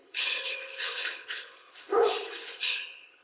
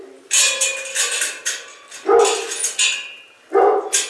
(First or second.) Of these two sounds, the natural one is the second